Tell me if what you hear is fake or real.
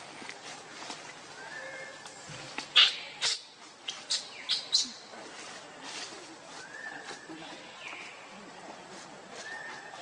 real